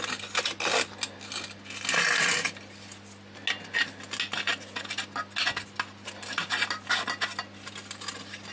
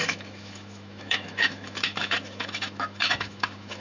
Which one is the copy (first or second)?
second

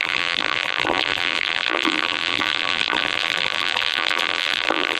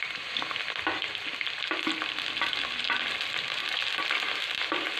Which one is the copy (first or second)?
first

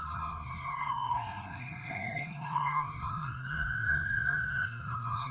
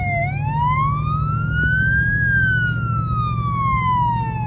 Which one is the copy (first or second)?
first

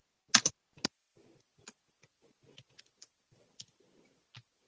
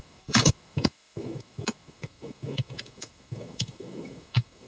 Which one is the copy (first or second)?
second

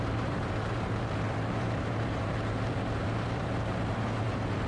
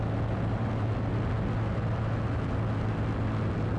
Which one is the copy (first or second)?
first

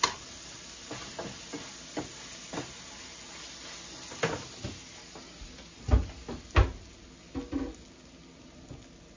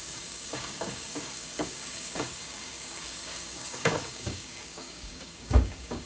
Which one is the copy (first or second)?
second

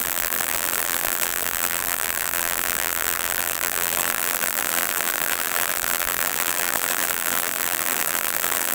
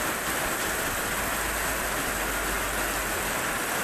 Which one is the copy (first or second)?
first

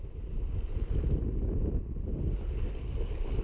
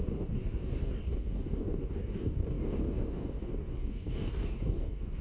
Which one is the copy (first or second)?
second